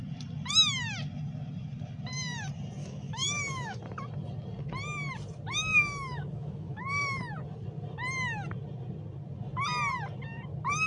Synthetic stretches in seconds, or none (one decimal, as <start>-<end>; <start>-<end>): 2.8-3.8; 5.7-7.2